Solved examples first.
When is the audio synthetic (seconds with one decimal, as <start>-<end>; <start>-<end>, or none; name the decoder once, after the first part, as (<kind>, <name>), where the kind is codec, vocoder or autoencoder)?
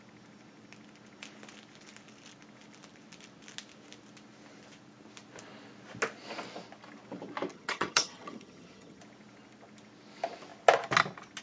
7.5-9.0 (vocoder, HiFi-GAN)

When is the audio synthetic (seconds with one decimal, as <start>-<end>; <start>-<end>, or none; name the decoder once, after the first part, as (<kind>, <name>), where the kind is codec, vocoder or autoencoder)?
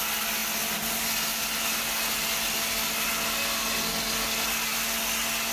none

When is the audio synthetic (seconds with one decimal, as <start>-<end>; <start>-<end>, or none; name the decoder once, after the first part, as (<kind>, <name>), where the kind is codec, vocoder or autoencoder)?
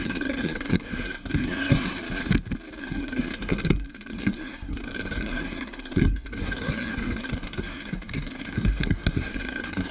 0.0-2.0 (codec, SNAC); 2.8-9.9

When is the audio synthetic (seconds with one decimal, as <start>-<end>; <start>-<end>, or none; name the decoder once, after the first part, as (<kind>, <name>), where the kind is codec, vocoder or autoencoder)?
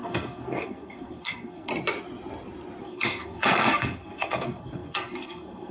0.0-1.7 (codec, SNAC); 2.8-5.7